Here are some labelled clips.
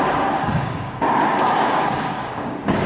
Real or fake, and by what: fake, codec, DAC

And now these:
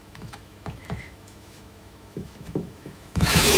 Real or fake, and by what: fake, autoencoder, DAC-VAE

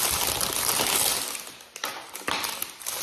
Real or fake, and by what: real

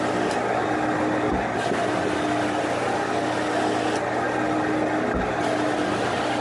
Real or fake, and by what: real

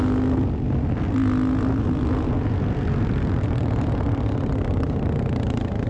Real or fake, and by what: real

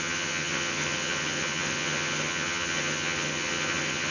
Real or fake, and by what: fake, vocoder, HiFi-GAN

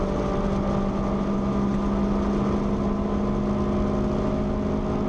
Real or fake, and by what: real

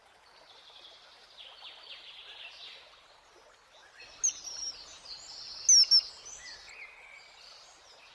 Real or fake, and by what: real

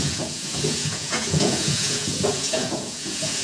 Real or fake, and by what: fake, vocoder, Vocos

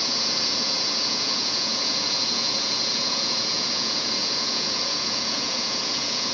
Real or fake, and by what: fake, vocoder, Vocos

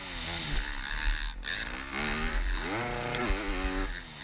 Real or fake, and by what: real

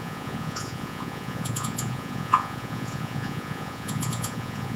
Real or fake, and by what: fake, vocoder, Vocos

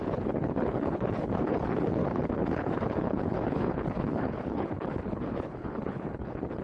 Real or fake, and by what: fake, codec, HILCodec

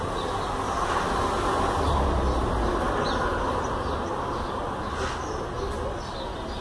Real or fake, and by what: real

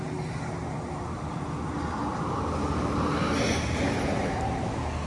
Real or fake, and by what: real